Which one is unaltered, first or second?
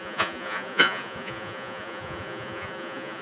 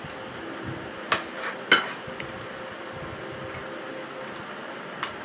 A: second